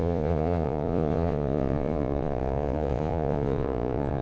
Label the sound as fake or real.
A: fake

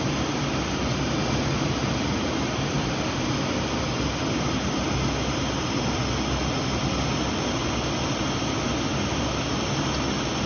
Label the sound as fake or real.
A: real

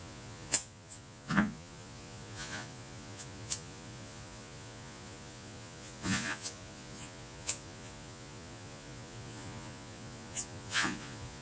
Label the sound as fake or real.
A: fake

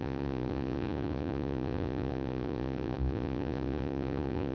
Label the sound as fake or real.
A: fake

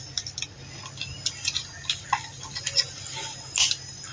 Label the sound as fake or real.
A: real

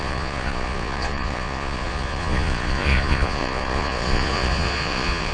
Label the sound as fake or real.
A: fake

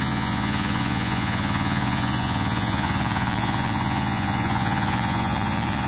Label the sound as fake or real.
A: fake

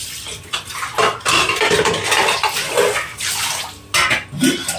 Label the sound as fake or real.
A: real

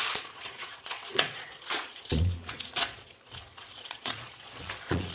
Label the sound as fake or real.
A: fake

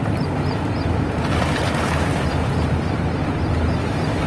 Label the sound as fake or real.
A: real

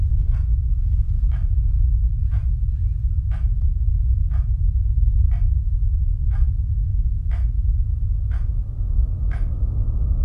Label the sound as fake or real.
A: real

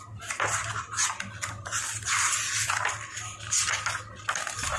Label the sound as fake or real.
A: real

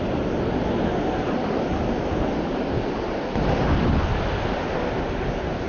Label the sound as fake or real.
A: real